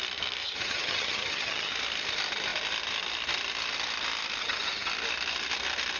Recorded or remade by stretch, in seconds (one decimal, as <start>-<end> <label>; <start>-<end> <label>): 0.0-0.4 recorded; 0.4-1.7 remade; 1.7-4.4 recorded; 4.4-4.9 remade; 4.9-6.0 recorded